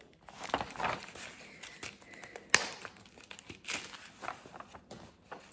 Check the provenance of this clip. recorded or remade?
recorded